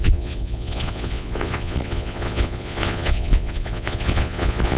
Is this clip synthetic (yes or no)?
yes